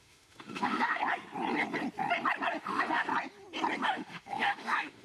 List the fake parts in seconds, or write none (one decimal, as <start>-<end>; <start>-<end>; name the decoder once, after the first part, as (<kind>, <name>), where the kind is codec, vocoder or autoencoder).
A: 0.0-1.0 (autoencoder, DAC-VAE); 2.6-3.1; 3.8-5.0